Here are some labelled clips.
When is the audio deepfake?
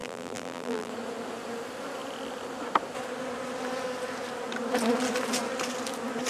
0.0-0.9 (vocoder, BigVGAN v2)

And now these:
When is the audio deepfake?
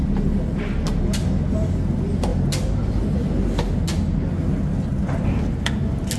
none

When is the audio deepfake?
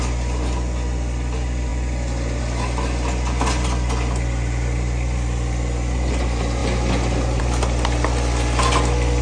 none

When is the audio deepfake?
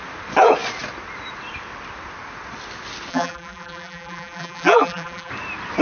3.1-5.3 (vocoder, BigVGAN v2)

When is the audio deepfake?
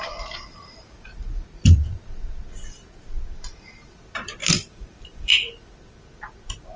4.4-5.5 (vocoder, BigVGAN v2)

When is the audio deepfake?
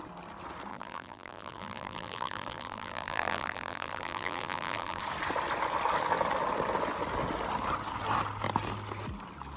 0.7-5.0 (vocoder, BigVGAN v2)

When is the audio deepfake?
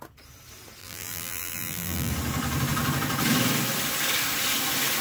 0.8-2.1 (vocoder, BigVGAN v2)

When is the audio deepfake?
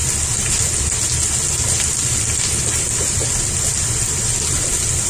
none